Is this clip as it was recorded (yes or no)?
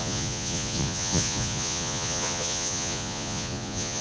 no